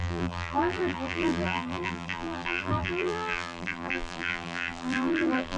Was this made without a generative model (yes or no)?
no